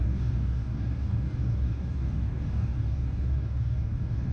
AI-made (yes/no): yes